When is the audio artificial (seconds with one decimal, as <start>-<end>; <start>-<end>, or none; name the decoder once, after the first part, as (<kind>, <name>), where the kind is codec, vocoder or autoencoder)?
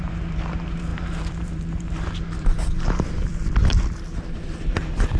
0.0-3.3 (vocoder, BigVGAN v2); 4.1-5.2